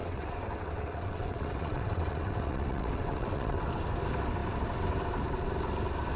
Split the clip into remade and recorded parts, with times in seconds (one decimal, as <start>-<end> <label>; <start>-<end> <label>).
0.0-3.7 remade; 3.7-6.2 recorded